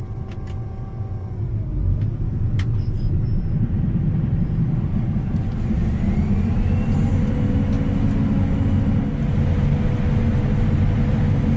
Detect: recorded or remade recorded